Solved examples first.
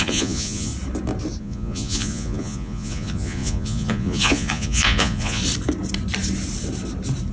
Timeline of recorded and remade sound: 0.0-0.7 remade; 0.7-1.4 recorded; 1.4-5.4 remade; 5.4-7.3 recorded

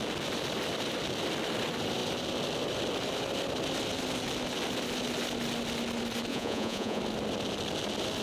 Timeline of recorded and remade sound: 0.0-6.3 recorded; 6.3-7.0 remade; 7.0-8.2 recorded

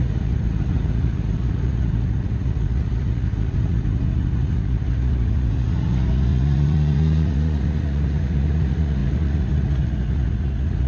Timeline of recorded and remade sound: 0.0-10.9 remade

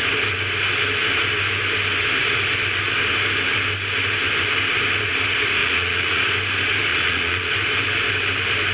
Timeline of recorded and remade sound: 0.0-5.6 recorded; 5.6-6.2 remade; 6.2-6.9 recorded; 6.9-7.5 remade; 7.5-8.7 recorded